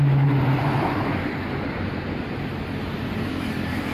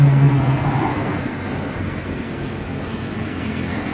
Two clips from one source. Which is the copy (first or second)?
second